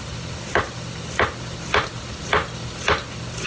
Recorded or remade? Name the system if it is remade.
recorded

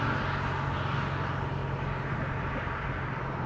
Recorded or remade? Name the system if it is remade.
recorded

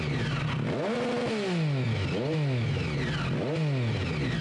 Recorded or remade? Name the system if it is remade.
recorded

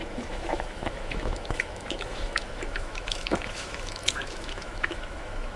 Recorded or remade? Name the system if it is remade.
remade, autoencoder, DAC-VAE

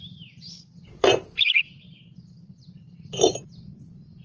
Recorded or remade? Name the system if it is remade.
remade, vocoder, BigVGAN v2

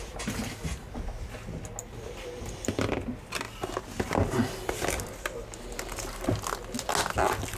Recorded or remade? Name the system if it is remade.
recorded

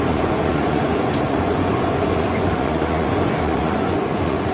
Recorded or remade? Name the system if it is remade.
remade, vocoder, Vocos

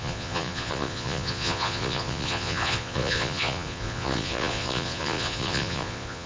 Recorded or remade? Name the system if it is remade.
remade, vocoder, Vocos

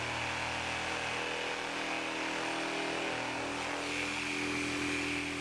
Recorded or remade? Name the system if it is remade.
recorded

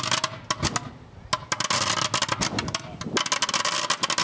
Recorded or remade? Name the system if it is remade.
recorded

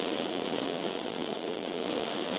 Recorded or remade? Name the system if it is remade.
remade, vocoder, Vocos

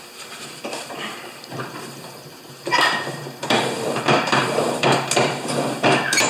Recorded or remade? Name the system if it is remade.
remade, vocoder, BigVGAN v2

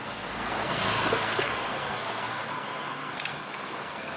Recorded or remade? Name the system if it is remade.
remade, codec, SNAC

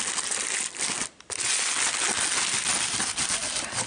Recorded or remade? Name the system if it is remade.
recorded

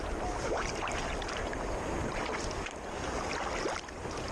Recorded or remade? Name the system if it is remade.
recorded